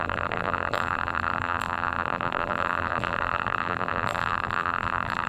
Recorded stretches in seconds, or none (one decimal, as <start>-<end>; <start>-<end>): none